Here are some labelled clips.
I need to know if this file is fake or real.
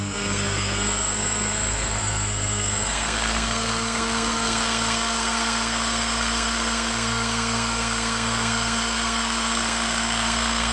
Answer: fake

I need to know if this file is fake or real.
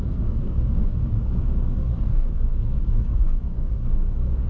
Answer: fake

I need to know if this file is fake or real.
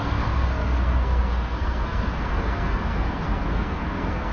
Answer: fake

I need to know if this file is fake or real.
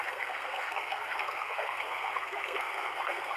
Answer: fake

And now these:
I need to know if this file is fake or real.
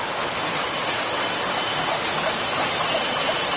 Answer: real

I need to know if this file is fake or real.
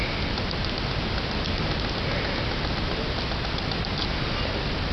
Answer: real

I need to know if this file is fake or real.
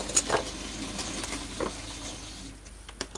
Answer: real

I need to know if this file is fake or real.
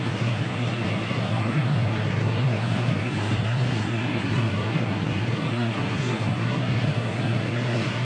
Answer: fake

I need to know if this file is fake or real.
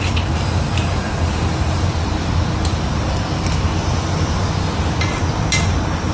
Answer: real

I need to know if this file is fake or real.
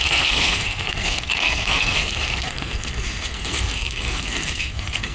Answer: fake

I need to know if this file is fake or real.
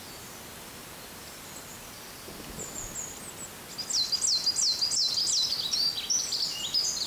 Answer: real